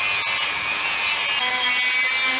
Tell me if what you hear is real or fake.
real